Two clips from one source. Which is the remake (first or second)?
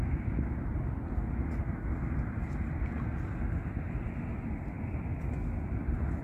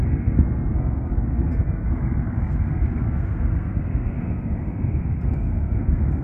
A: second